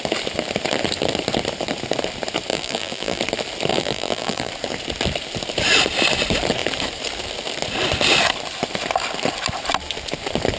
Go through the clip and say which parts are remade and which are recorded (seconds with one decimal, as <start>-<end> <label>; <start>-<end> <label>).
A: 0.0-2.5 recorded; 2.5-3.2 remade; 3.2-3.7 recorded; 3.7-4.5 remade; 4.5-10.6 recorded